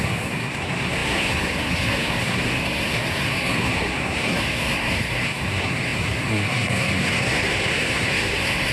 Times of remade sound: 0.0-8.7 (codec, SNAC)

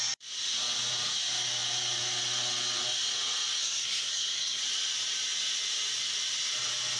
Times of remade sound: 3.6-4.6 (codec, SNAC)

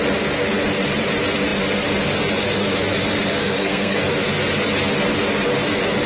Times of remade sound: 3.4-4.0 (codec, SNAC)

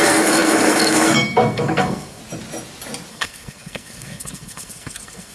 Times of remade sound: 0.0-2.2 (codec, SNAC); 3.1-5.3